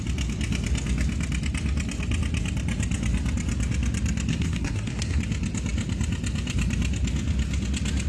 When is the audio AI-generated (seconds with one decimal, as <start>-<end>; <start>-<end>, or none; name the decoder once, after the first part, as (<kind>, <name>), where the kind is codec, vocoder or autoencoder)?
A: 4.3-5.2 (codec, SNAC)